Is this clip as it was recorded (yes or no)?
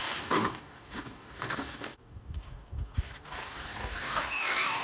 no